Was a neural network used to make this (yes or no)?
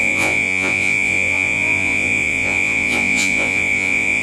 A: yes